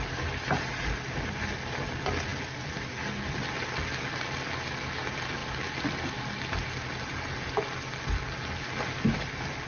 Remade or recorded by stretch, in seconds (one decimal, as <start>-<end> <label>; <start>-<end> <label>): 0.0-9.7 recorded